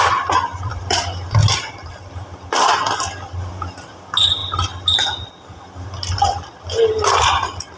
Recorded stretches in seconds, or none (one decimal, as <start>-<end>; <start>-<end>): 0.0-7.8